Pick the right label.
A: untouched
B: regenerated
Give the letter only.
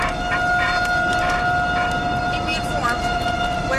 A